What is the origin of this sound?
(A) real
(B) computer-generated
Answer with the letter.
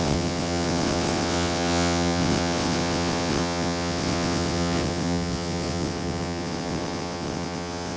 B